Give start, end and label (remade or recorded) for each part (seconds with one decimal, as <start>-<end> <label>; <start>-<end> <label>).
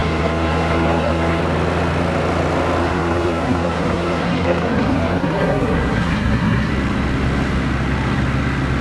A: 0.0-1.4 remade; 1.4-2.8 recorded; 2.8-6.7 remade; 6.7-8.8 recorded